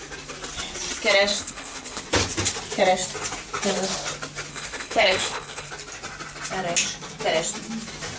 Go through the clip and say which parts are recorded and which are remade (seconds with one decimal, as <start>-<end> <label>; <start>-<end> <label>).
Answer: 0.0-1.3 recorded; 1.3-2.0 remade; 2.0-4.5 recorded; 4.5-5.7 remade; 5.7-8.2 recorded